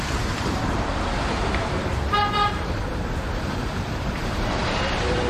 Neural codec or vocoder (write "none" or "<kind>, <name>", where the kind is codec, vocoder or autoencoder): vocoder, BigVGAN v2